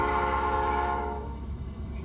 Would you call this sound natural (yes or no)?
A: no